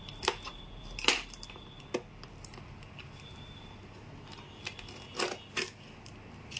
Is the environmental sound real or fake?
real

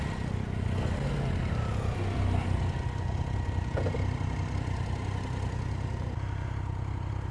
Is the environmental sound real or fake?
real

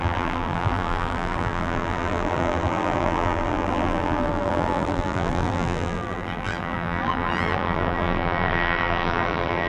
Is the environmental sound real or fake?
fake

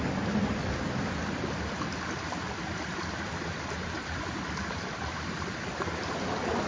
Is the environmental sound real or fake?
fake